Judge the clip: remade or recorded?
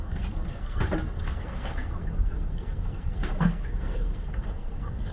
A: remade